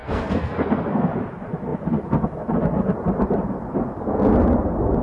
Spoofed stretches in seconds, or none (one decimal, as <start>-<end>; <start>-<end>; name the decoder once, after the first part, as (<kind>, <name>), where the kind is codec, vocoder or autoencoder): 0.0-1.1 (codec, SNAC)